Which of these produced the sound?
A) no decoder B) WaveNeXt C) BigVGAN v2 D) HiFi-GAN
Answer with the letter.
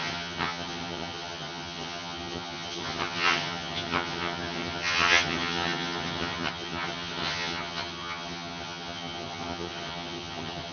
D